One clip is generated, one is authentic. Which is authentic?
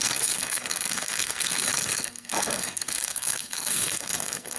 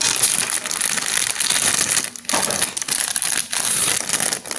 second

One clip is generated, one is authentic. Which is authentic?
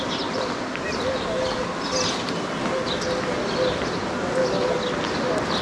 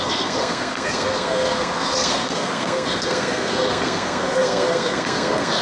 first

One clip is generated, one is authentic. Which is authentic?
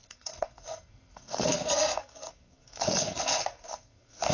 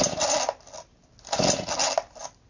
second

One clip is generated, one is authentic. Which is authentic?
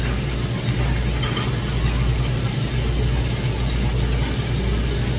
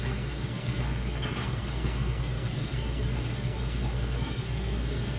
first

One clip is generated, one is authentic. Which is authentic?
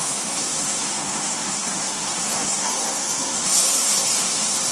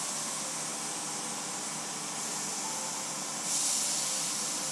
second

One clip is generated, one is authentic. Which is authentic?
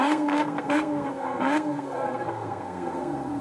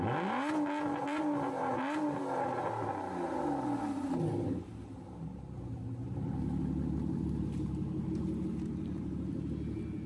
second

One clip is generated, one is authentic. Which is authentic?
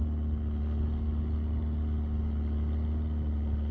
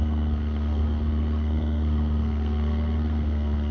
first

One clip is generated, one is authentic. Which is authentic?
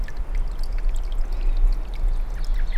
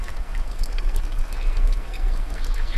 first